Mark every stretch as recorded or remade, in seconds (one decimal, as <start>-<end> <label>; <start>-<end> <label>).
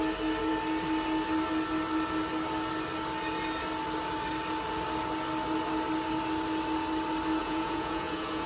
0.0-7.4 recorded; 7.4-8.5 remade